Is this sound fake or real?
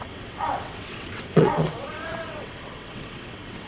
fake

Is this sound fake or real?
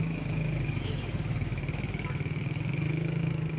fake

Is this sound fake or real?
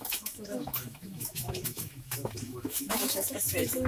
fake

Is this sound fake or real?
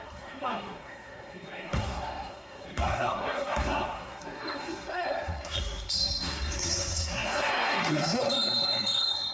fake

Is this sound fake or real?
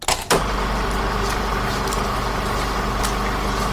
real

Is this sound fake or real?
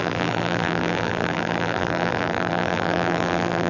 fake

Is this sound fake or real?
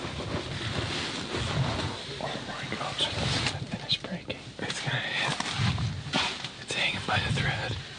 real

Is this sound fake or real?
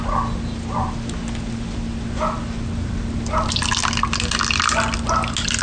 real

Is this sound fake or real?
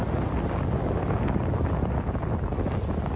real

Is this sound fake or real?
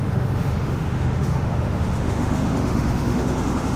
fake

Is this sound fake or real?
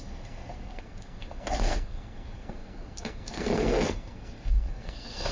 fake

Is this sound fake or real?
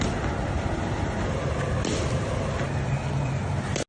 real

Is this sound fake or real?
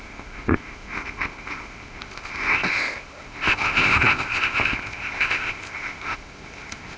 fake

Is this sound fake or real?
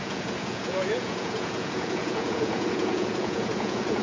fake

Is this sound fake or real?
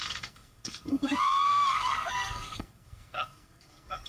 fake